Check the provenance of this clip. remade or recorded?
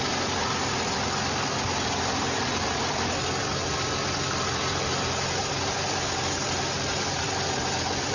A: recorded